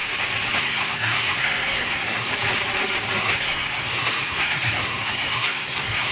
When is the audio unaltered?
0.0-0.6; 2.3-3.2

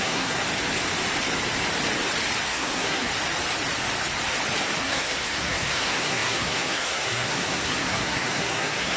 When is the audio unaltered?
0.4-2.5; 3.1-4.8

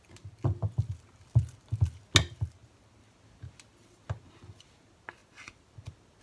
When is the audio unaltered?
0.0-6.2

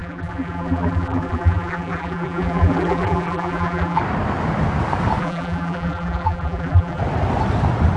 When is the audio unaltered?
4.0-5.2; 7.0-8.0

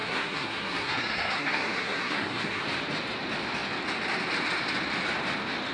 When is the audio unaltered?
2.6-5.7